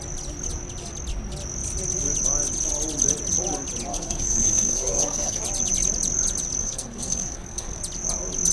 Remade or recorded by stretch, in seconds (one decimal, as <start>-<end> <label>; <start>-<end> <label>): 0.0-3.9 recorded; 3.9-5.4 remade; 5.4-6.6 recorded; 6.6-7.8 remade; 7.8-8.5 recorded